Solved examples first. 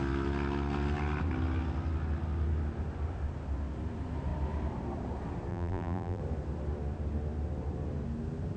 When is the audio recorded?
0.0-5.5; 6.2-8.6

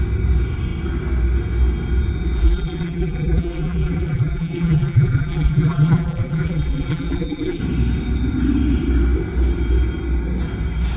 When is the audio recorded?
0.0-2.4; 7.6-11.0

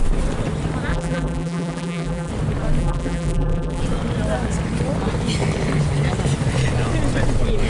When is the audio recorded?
0.0-0.9; 2.3-2.8; 3.8-7.7

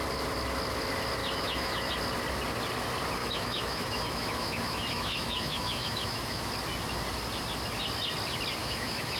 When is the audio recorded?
0.0-1.2; 1.9-3.2; 6.5-8.6